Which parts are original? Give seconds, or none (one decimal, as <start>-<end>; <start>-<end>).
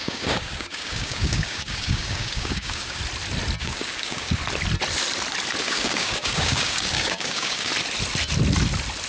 3.0-3.6; 4.4-5.6; 7.7-9.1